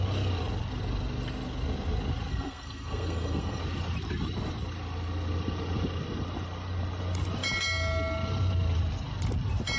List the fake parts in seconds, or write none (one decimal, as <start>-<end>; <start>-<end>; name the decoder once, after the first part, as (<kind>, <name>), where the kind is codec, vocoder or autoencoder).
2.3-3.6 (codec, SNAC)